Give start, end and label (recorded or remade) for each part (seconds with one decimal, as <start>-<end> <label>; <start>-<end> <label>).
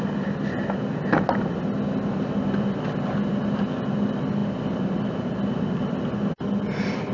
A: 0.0-7.1 recorded